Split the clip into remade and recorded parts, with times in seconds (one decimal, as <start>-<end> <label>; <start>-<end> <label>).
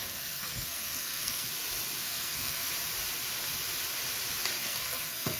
0.0-1.5 remade; 1.5-2.0 recorded; 2.0-2.7 remade; 2.7-4.6 recorded; 4.6-5.4 remade